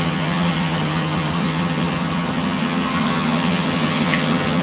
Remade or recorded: remade